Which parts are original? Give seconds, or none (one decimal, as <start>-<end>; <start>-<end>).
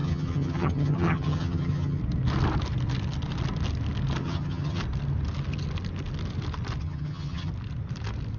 2.0-4.2; 4.8-6.8; 7.5-8.4